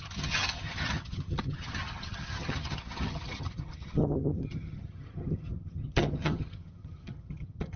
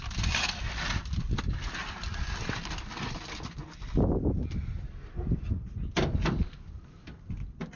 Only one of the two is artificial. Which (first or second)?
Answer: first